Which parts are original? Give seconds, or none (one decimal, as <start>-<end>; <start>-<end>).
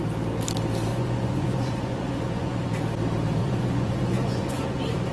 0.0-0.9; 2.7-3.4